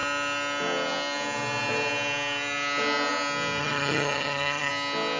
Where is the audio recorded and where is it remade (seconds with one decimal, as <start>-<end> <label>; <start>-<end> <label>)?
0.0-3.6 recorded; 3.6-4.7 remade; 4.7-5.2 recorded